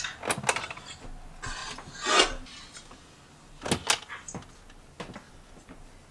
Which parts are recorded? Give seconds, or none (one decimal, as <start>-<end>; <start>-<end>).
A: 0.0-6.1